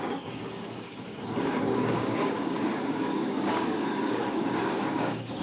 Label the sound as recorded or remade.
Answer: remade